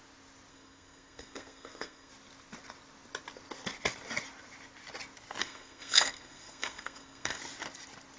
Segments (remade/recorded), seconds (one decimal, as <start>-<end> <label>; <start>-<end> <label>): 0.0-0.5 recorded; 0.5-2.1 remade; 2.1-5.4 recorded; 5.4-7.4 remade; 7.4-8.2 recorded